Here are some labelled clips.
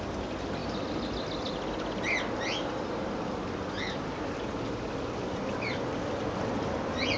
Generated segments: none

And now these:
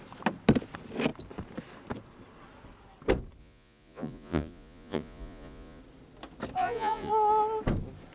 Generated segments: 3.4-5.8 (vocoder, Vocos); 6.6-7.1